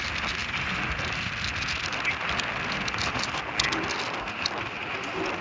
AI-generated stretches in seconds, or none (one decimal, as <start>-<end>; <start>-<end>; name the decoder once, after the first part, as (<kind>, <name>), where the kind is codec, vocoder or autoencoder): none